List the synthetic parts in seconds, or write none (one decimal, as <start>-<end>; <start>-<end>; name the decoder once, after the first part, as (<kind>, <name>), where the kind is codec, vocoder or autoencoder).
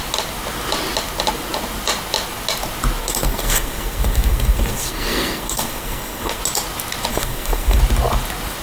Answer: 3.0-6.4 (codec, SNAC); 7.1-7.8